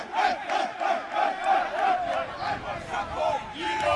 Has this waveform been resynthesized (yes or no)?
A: no